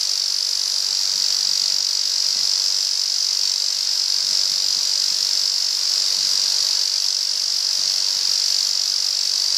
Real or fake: real